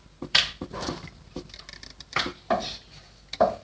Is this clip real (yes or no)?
no